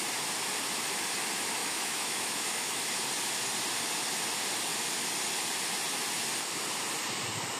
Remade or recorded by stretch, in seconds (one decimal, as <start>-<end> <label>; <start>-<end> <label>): 0.0-1.6 recorded; 1.6-2.8 remade; 2.8-7.6 recorded